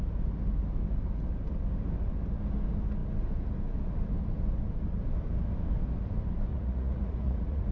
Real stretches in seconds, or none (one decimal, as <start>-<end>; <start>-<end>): 0.0-6.5